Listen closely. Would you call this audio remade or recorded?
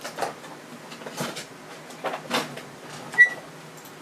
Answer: recorded